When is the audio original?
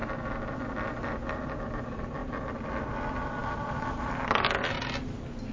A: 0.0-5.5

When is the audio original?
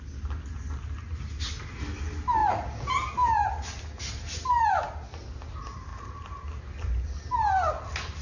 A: 0.0-8.2